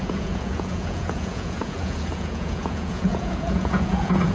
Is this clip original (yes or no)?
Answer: no